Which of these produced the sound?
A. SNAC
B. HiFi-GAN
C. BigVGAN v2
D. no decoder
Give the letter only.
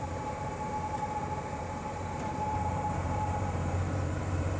C